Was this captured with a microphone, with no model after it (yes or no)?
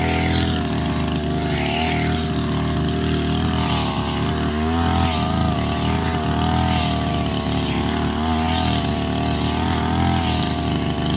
yes